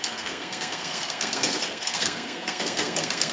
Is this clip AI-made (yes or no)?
yes